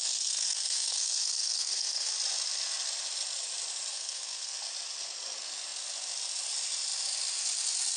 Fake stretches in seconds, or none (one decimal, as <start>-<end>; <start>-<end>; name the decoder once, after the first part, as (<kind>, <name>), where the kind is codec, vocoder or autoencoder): 0.0-2.1 (codec, SNAC); 3.9-4.5